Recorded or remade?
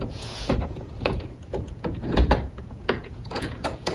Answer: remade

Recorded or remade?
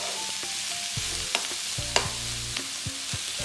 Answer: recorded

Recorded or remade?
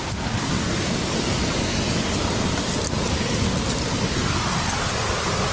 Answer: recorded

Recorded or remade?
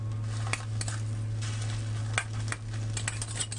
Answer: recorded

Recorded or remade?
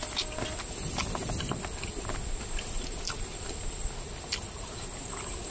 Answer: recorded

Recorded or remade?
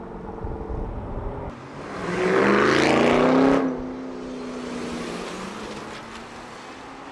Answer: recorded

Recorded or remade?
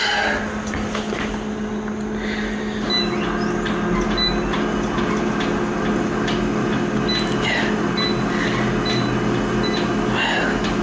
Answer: recorded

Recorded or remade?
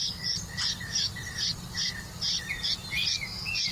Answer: recorded